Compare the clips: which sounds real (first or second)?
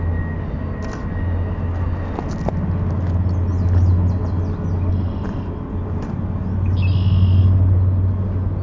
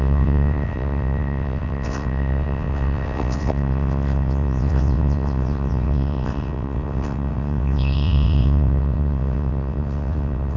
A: first